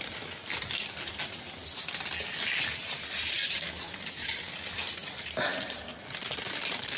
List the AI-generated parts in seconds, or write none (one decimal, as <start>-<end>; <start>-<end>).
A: none